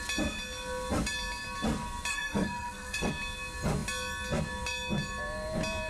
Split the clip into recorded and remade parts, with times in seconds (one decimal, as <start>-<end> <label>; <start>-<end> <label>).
0.0-2.1 recorded; 2.1-3.1 remade; 3.1-5.9 recorded